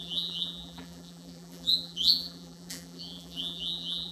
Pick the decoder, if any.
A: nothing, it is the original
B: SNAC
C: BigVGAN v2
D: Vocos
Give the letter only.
C